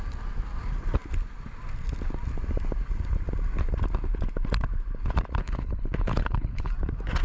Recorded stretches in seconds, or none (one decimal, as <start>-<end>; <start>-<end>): 0.0-5.4; 6.7-7.2